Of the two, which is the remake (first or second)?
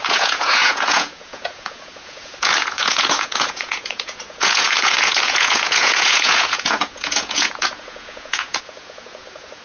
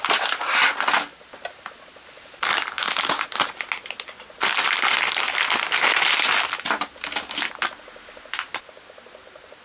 first